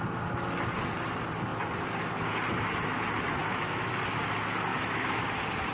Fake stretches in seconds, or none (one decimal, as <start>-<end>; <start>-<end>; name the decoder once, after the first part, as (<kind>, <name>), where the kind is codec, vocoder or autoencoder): 3.4-3.9 (autoencoder, DAC-VAE); 4.7-5.2